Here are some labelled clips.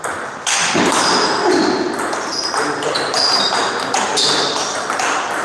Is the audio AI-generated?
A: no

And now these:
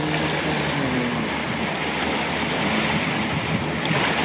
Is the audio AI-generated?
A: no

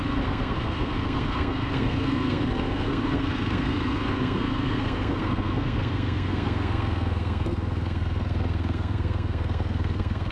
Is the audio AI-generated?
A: yes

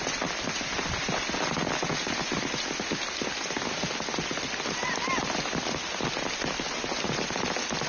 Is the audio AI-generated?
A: no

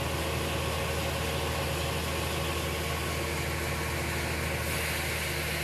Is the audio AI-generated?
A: no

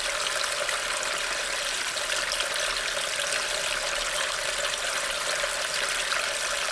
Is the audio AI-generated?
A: no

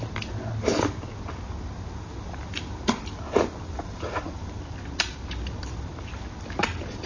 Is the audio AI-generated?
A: no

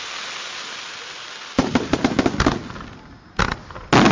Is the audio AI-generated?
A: no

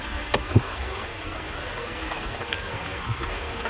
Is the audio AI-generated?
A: yes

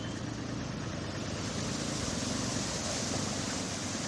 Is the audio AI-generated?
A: no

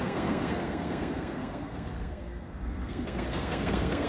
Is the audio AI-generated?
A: yes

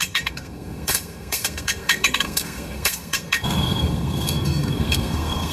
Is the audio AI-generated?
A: yes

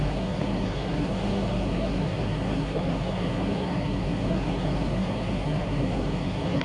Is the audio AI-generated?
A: yes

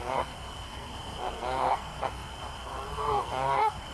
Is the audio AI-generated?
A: yes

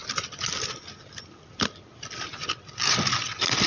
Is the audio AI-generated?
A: no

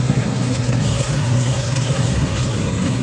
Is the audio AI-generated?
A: yes